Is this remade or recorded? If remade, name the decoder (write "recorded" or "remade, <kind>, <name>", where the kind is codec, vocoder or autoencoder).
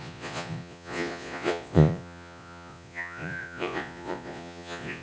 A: remade, vocoder, Vocos